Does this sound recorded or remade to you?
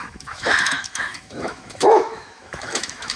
remade